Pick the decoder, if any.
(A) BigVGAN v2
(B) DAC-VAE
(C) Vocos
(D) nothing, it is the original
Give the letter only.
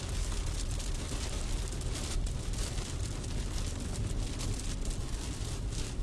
D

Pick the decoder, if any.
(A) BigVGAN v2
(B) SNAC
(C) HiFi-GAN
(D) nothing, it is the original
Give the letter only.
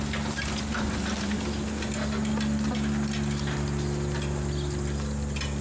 D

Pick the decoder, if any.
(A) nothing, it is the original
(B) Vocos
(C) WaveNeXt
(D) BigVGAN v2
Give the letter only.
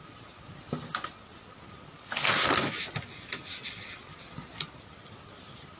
A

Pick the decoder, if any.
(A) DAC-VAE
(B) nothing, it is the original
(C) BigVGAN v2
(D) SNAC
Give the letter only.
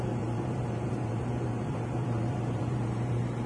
C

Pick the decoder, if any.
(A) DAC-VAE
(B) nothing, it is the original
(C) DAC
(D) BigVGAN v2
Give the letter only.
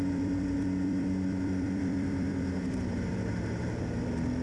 D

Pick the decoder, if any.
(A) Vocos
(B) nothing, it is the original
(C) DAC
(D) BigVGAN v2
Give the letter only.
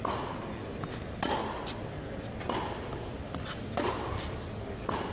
B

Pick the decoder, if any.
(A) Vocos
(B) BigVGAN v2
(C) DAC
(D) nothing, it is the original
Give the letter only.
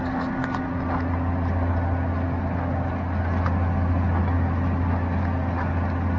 D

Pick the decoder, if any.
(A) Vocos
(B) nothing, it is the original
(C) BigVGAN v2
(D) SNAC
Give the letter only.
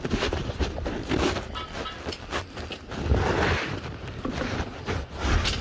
B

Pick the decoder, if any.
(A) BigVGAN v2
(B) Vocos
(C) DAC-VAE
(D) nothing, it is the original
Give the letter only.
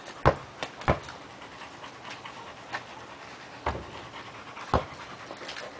D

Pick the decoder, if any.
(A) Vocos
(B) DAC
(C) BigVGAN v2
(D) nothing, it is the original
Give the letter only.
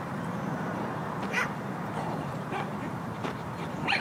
C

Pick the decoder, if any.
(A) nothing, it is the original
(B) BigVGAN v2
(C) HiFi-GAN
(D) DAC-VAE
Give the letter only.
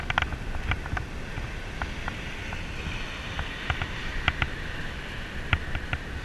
A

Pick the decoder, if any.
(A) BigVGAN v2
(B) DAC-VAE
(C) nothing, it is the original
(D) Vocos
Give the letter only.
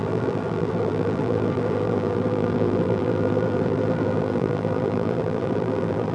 A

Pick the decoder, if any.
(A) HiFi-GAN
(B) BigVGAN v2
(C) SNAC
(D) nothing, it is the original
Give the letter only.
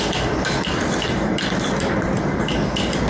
B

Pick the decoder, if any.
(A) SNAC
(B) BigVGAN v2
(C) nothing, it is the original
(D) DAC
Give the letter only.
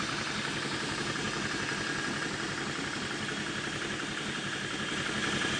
C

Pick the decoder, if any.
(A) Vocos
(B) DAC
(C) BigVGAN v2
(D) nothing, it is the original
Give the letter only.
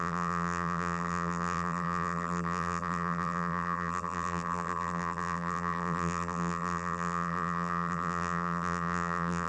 C